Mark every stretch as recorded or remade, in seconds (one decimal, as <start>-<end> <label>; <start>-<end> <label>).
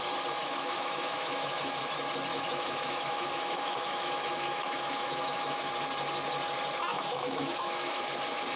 0.0-0.4 recorded; 0.4-1.8 remade; 1.8-2.3 recorded; 2.3-5.7 remade; 5.7-6.9 recorded; 6.9-8.0 remade; 8.0-8.6 recorded